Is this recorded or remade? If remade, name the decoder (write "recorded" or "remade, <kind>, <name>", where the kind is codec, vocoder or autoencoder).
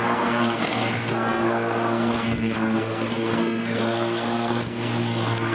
remade, codec, SNAC